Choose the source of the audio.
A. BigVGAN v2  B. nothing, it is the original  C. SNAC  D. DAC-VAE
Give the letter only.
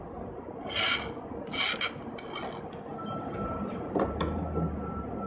B